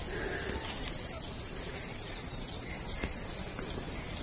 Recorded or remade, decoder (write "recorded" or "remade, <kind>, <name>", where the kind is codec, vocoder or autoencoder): recorded